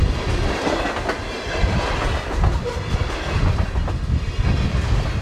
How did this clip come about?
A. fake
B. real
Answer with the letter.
B